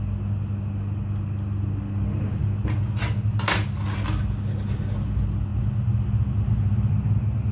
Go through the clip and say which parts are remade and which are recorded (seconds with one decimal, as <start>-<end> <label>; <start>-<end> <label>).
0.0-7.5 recorded